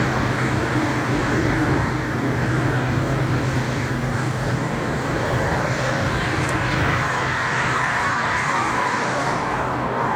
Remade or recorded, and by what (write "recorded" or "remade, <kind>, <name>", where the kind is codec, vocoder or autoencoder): remade, codec, DAC